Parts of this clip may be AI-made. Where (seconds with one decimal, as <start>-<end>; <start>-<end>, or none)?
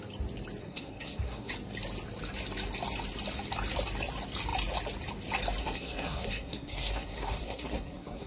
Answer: 0.6-1.5; 5.6-8.3